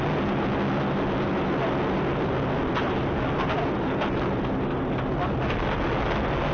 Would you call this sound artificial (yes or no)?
no